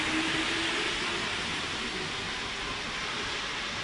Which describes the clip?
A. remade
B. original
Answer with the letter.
B